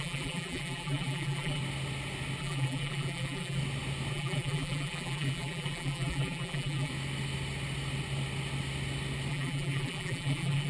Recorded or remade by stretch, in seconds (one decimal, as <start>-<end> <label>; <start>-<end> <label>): 0.0-1.6 remade; 1.6-2.4 recorded; 2.4-3.6 remade; 3.6-4.1 recorded; 4.1-6.9 remade; 6.9-9.3 recorded; 9.3-10.7 remade

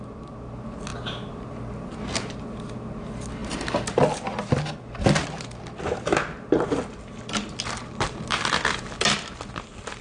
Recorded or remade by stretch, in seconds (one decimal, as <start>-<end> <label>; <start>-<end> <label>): 0.0-10.0 recorded